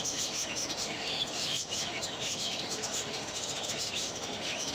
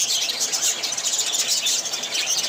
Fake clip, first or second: first